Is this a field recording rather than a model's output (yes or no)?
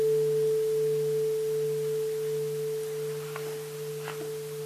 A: yes